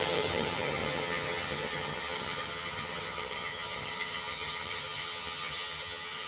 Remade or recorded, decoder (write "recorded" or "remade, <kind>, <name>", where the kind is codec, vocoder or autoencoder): remade, vocoder, HiFi-GAN